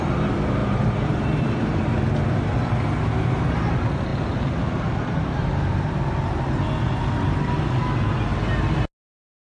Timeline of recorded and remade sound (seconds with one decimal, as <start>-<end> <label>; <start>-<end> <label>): 0.0-0.6 recorded; 0.6-1.8 remade; 1.8-9.5 recorded